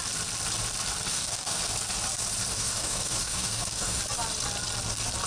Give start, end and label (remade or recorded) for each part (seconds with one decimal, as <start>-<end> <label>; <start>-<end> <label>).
0.0-1.1 recorded; 1.1-1.6 remade; 1.6-2.5 recorded; 2.5-4.0 remade; 4.0-5.3 recorded